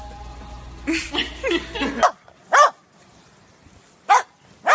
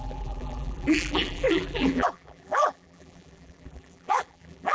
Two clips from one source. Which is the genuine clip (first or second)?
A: first